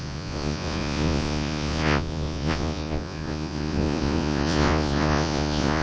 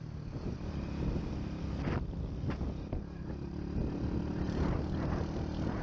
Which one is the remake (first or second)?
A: first